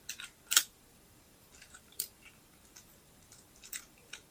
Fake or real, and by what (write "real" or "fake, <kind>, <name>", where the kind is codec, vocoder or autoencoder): fake, vocoder, BigVGAN v2